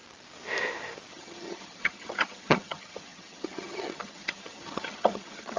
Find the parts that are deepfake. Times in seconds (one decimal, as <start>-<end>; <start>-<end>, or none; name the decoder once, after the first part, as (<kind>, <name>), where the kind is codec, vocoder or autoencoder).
1.1-5.6 (vocoder, HiFi-GAN)